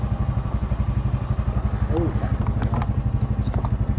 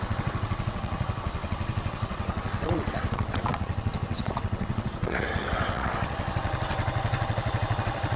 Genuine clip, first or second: first